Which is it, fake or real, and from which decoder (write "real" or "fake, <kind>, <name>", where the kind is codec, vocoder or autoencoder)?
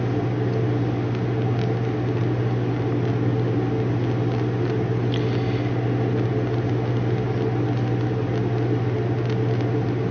real